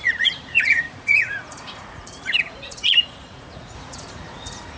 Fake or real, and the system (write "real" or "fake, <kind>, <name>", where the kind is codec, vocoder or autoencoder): fake, vocoder, Vocos